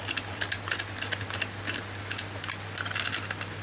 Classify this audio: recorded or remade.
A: recorded